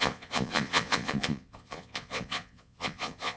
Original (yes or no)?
no